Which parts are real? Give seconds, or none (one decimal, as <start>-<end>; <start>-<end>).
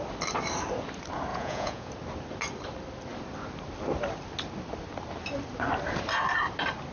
0.0-1.3; 1.9-6.9